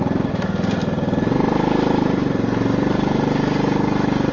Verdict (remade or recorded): recorded